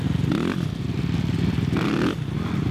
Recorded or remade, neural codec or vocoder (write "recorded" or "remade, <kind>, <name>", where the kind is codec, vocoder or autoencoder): recorded